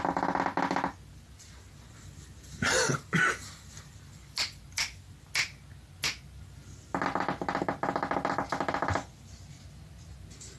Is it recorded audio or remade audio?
recorded